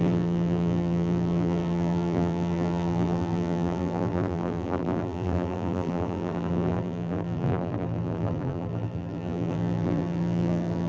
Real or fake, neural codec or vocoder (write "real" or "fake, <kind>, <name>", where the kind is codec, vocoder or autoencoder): fake, vocoder, BigVGAN v2